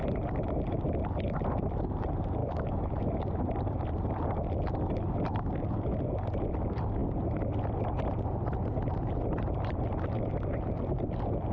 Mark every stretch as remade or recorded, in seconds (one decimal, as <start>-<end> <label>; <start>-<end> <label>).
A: 0.0-2.4 recorded; 2.4-3.1 remade; 3.1-11.5 recorded